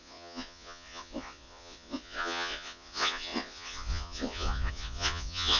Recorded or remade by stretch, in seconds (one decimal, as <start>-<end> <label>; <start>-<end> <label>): 0.0-5.6 remade